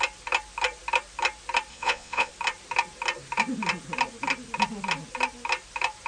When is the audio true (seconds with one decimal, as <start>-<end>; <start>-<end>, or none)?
0.0-1.7; 2.3-6.1